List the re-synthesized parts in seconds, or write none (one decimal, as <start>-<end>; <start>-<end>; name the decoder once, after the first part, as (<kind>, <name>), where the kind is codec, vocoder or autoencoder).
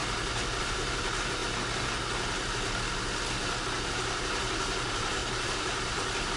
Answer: 0.6-1.4 (vocoder, BigVGAN v2); 3.7-6.4